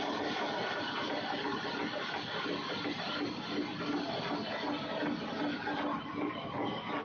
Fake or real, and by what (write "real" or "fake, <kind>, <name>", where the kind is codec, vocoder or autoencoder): real